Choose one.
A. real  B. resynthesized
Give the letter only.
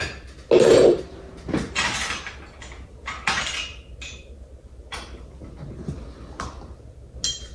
A